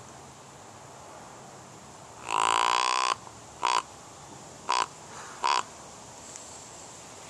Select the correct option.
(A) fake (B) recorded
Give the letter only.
B